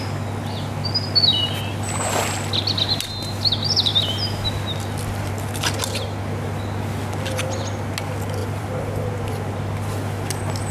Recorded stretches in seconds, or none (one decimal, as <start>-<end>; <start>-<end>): 0.0-8.4; 9.1-10.7